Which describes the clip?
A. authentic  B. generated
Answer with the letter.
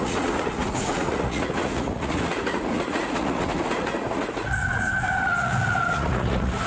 B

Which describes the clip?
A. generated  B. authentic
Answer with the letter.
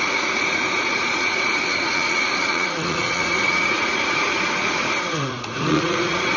A